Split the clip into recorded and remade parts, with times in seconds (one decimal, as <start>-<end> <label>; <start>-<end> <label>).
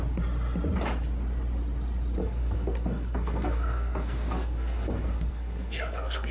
0.0-2.2 recorded; 2.2-6.3 remade